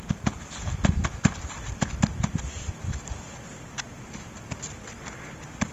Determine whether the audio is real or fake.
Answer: real